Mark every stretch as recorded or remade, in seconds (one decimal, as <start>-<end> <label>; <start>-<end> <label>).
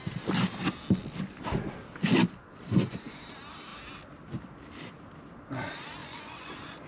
0.0-2.7 recorded; 2.7-3.2 remade; 3.2-6.0 recorded; 6.0-6.9 remade